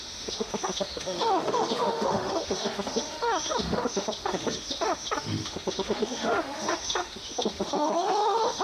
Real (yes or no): no